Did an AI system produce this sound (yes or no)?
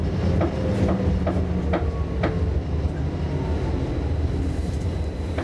no